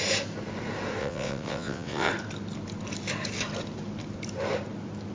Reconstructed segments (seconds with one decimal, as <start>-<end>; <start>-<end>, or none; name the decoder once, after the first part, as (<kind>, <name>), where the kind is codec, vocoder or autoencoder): 1.0-2.1 (vocoder, WaveNeXt)

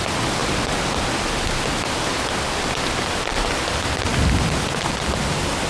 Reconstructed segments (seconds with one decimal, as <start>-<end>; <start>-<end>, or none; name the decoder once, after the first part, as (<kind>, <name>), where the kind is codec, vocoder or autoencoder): none

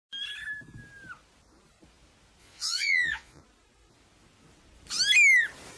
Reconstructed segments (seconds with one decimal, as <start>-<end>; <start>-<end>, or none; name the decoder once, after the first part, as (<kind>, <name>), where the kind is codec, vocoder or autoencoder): 2.4-3.4 (vocoder, Vocos)

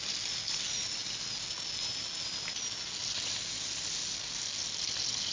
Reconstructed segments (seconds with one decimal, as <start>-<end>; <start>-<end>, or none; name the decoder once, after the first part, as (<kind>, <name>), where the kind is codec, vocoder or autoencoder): none

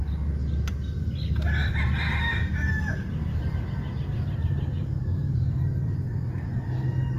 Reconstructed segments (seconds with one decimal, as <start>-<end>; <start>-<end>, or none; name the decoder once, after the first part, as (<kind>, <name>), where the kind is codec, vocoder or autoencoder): 1.6-2.7 (vocoder, BigVGAN v2); 5.2-6.6